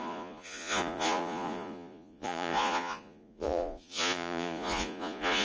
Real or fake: fake